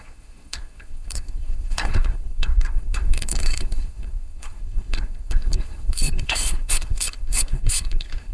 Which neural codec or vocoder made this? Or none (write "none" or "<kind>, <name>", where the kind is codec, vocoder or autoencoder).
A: codec, SNAC